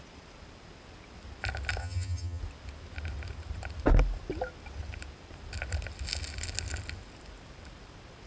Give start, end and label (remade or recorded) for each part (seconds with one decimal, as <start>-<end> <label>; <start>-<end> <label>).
0.0-1.8 recorded; 1.8-2.4 remade; 2.4-8.3 recorded